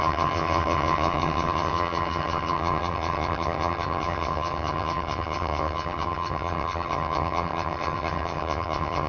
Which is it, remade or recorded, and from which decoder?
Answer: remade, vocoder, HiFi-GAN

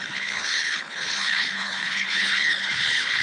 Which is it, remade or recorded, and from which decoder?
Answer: remade, codec, HILCodec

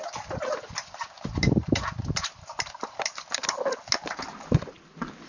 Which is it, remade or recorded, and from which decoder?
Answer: recorded